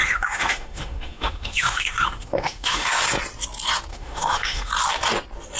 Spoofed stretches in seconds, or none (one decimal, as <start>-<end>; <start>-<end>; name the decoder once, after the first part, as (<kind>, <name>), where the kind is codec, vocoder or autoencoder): 0.0-3.0 (autoencoder, DAC-VAE); 3.9-4.7